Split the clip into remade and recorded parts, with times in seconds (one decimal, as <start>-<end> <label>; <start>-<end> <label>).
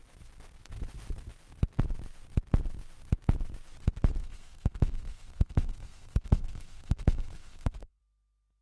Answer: 0.0-4.2 recorded; 4.2-8.0 remade; 8.0-8.6 recorded